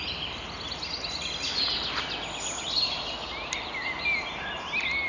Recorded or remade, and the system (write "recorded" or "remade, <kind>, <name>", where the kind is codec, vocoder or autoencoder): recorded